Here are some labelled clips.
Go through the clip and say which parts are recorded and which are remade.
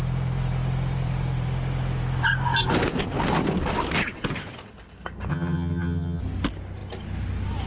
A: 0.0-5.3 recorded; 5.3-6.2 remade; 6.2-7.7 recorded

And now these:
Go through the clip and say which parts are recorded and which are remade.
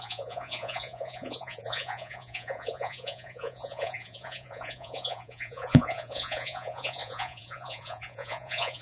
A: 0.0-8.8 remade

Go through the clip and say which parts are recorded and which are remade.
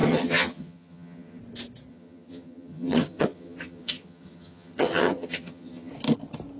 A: 0.0-1.4 remade; 1.4-1.9 recorded; 1.9-5.9 remade; 5.9-6.6 recorded